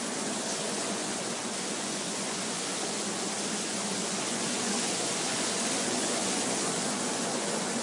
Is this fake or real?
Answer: fake